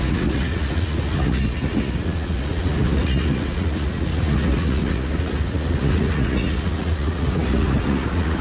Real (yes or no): no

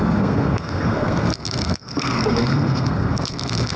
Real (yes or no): no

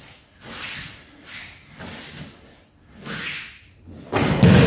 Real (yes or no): yes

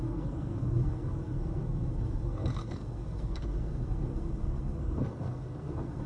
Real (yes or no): no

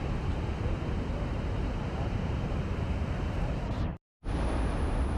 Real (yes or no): no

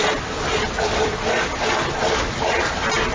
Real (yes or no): yes